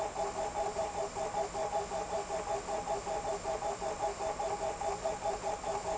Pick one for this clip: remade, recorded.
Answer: recorded